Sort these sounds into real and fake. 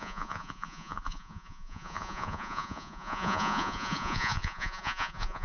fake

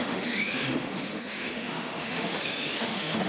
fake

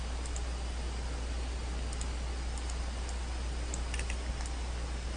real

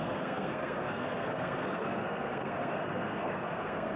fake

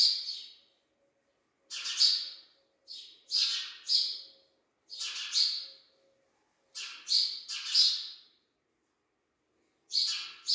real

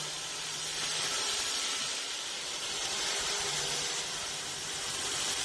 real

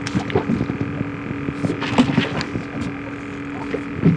real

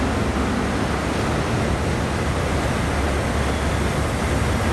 real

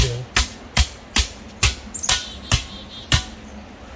real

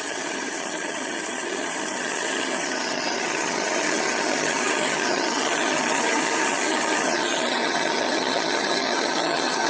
fake